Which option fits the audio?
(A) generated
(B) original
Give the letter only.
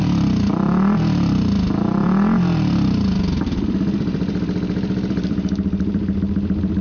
A